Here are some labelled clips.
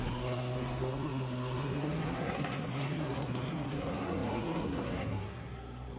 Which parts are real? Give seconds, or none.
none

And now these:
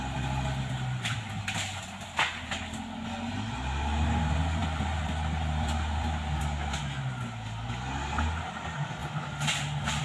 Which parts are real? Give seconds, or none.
0.0-10.0

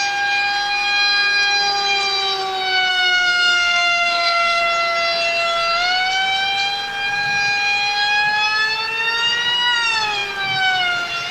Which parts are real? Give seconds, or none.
0.0-2.9; 4.6-11.3

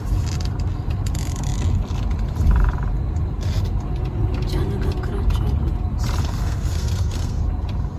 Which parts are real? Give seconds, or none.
0.0-6.2; 7.4-8.0

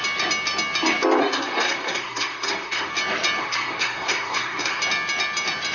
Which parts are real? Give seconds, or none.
0.0-1.2; 2.9-3.4; 4.8-5.7

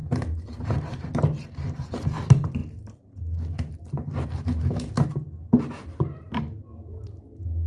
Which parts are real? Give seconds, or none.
0.0-7.7